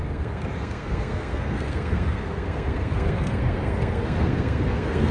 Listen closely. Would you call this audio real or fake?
fake